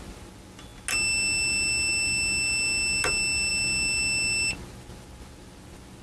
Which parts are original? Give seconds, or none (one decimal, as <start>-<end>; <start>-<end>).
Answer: 0.0-6.0